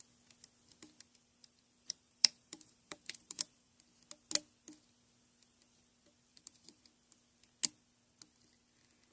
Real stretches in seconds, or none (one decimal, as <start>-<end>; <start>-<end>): 0.0-1.4; 3.7-6.3; 6.8-9.1